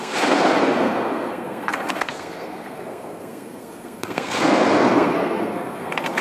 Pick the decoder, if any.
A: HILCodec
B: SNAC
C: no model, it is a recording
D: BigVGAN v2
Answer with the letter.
B